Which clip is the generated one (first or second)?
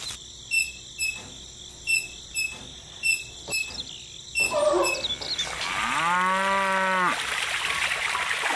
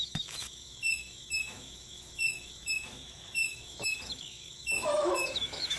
second